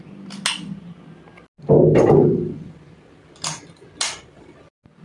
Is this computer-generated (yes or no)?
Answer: no